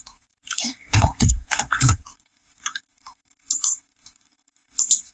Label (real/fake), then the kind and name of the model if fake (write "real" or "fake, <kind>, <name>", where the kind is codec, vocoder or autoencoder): fake, codec, SNAC